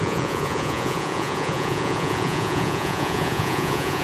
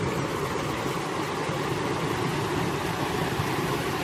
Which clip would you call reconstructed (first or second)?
first